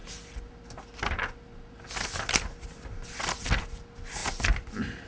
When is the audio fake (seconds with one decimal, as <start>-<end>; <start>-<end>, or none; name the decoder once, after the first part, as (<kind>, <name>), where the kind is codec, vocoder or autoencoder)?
4.2-5.1 (vocoder, BigVGAN v2)